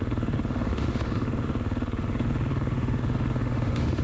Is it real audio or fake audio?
fake